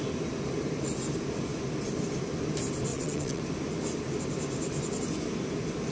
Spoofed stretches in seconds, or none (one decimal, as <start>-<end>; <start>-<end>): 2.9-3.4